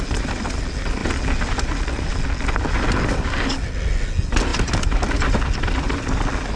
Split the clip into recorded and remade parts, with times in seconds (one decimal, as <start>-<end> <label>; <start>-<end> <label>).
0.0-6.6 recorded